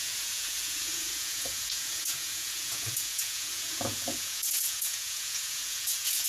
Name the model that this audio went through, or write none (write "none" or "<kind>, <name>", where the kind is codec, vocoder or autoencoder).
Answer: vocoder, Vocos